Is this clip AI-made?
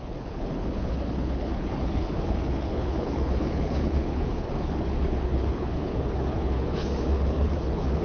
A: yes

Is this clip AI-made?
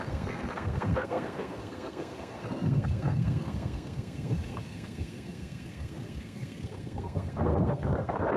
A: yes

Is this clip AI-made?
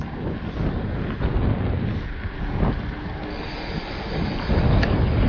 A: no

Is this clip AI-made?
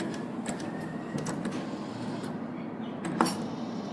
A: no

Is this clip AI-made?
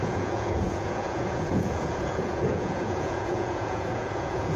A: yes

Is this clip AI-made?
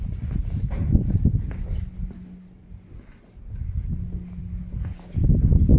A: no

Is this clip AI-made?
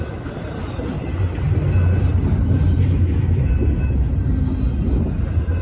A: no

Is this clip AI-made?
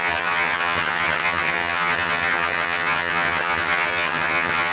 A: yes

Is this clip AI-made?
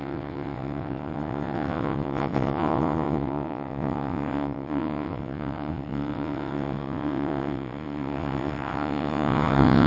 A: yes